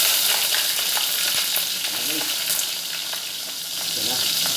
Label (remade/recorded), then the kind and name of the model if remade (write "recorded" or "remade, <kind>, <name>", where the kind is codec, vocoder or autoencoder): recorded